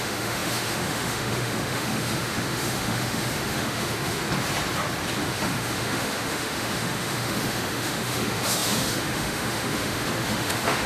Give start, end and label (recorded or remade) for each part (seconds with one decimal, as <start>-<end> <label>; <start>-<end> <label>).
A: 0.0-4.2 remade; 4.2-5.2 recorded; 5.2-10.9 remade